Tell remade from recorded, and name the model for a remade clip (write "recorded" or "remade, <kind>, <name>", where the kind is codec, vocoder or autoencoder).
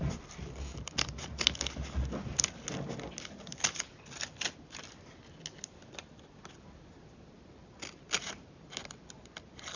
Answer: recorded